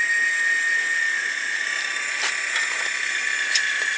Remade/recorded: recorded